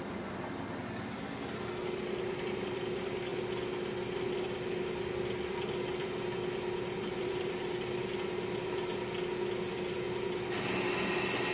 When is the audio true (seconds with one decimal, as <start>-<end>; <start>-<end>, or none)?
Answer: 0.0-11.5